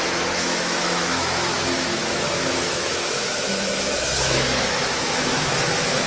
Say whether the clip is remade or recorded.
remade